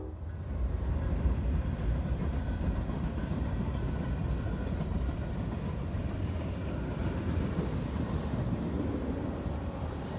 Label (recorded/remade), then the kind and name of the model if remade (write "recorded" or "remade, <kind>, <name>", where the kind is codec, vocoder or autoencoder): recorded